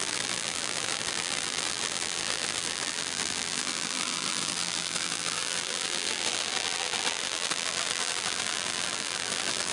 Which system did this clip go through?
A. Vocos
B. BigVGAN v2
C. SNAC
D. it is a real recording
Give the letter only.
B